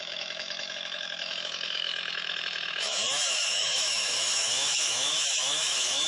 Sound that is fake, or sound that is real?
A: fake